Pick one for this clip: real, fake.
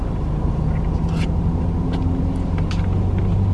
real